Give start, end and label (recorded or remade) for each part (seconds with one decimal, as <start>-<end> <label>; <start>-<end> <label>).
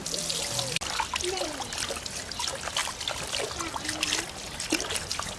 0.0-5.4 recorded